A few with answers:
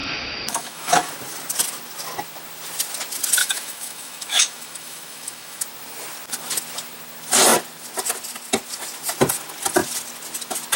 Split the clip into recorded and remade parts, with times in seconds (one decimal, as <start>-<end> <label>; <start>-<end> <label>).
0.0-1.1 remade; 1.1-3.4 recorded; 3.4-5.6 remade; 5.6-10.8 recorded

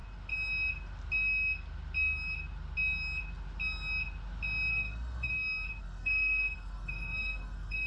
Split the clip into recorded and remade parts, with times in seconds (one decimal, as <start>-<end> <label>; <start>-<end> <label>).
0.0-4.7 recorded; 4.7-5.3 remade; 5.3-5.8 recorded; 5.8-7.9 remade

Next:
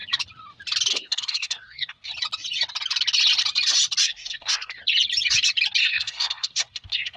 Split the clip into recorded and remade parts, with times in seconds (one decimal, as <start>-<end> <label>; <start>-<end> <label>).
0.0-0.9 recorded; 0.9-2.1 remade; 2.1-4.0 recorded; 4.0-4.8 remade; 4.8-5.8 recorded; 5.8-7.2 remade